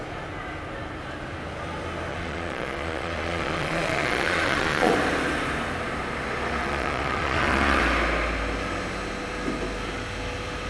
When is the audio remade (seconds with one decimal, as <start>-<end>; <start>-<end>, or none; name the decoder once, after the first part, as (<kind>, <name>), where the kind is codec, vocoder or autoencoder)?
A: 2.1-4.9 (vocoder, Vocos); 6.6-7.8